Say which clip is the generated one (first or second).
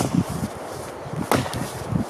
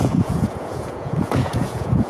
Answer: second